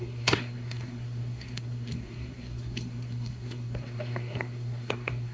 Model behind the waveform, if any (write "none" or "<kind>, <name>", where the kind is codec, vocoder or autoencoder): codec, SNAC